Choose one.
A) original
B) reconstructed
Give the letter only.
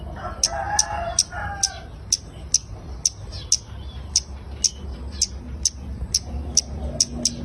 A